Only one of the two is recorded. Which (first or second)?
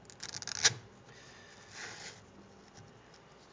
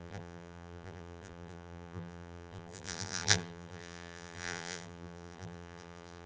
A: first